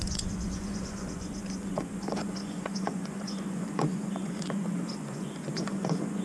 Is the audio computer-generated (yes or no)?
yes